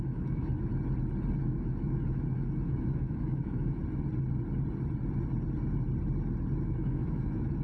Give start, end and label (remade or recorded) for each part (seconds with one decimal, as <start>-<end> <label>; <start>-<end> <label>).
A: 0.0-0.7 remade; 0.7-1.4 recorded; 1.4-3.8 remade; 3.8-6.6 recorded; 6.6-7.6 remade